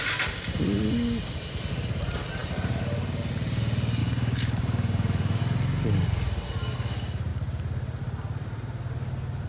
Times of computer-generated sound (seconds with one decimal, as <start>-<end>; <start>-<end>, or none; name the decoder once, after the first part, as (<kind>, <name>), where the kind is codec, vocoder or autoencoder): 4.0-5.4 (codec, DAC)